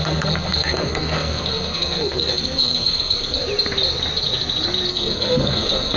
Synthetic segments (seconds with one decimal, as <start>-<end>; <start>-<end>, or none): 0.0-3.4; 4.9-6.0